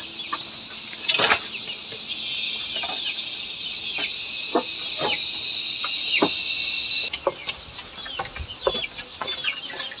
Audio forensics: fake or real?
real